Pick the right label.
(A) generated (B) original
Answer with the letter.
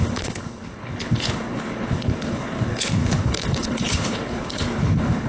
A